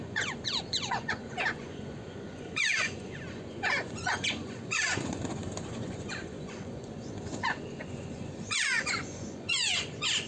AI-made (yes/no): yes